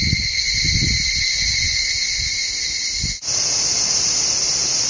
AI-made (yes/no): no